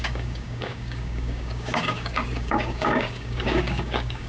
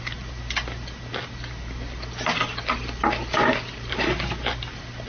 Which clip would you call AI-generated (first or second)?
first